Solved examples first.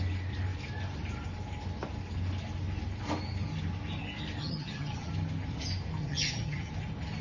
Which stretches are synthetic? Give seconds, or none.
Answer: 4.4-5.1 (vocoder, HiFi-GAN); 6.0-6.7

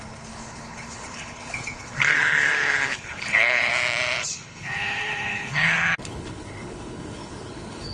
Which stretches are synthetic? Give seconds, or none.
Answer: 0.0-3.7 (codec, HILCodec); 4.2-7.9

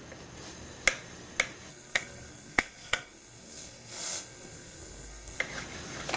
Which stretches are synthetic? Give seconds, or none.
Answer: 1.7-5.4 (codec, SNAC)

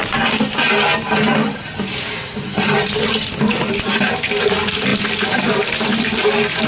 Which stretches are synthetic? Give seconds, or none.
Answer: none

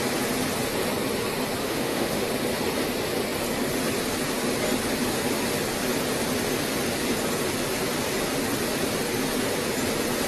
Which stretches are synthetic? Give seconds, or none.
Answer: 1.6-2.3 (autoencoder, DAC-VAE)